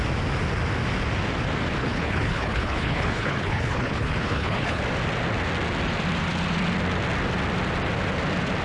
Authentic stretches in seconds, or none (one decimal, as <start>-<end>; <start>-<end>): 0.0-1.8; 4.8-8.6